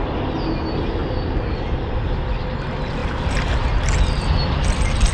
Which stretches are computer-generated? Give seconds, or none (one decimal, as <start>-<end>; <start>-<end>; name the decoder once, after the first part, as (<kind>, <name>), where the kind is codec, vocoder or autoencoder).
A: none